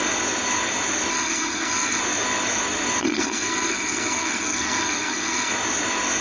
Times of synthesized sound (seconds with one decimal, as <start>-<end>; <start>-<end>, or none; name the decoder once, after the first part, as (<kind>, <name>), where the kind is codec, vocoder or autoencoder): 1.1-2.0 (codec, SNAC); 3.0-5.5